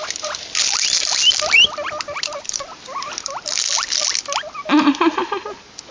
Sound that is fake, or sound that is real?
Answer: real